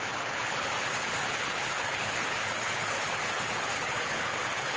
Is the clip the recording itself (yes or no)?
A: no